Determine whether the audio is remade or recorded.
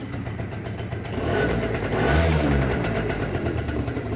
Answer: remade